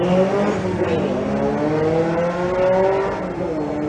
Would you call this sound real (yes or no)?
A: yes